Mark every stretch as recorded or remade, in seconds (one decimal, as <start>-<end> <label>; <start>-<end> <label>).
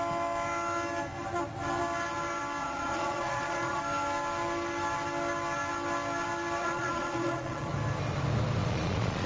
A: 0.0-2.6 recorded; 2.6-3.8 remade; 3.8-6.6 recorded; 6.6-7.7 remade; 7.7-8.6 recorded; 8.6-9.3 remade